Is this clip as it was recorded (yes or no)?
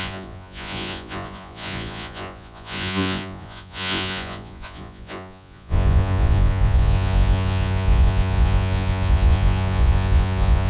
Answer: no